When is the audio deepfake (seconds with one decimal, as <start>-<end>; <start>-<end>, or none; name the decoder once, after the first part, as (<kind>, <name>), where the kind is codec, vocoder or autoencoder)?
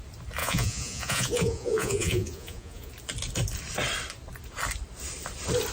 0.4-2.9 (vocoder, Vocos)